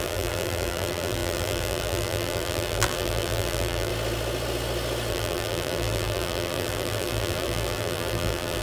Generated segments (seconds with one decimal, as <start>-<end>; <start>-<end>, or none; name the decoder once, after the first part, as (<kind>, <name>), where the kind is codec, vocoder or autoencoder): 0.0-3.9 (vocoder, BigVGAN v2); 5.1-8.6